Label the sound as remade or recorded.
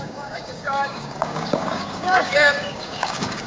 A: remade